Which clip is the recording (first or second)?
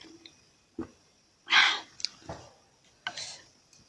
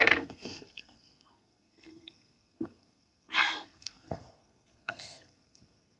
first